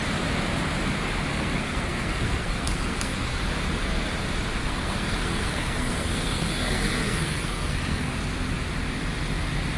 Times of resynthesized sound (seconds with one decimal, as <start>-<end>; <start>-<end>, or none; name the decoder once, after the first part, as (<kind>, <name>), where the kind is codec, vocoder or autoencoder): 1.3-3.4 (codec, SNAC); 4.6-8.1